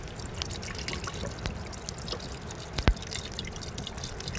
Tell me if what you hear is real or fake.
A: real